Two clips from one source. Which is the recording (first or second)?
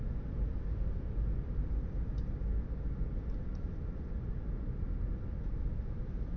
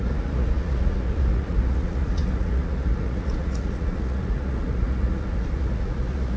first